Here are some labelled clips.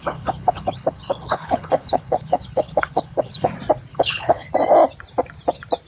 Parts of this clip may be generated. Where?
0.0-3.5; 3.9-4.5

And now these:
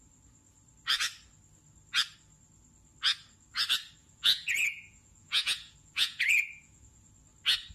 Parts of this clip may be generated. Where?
4.0-7.1

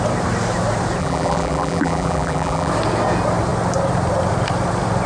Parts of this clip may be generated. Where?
1.0-2.7

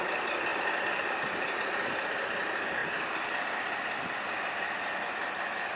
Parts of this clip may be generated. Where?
none

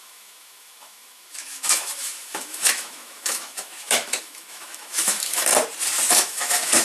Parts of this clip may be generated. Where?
0.0-5.5; 6.1-6.8

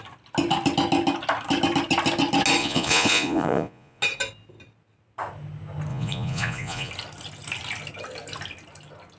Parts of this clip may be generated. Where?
2.6-4.0; 5.9-6.9

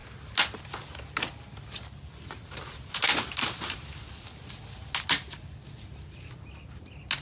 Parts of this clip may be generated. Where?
none

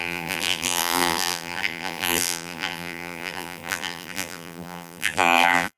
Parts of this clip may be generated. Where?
0.0-5.8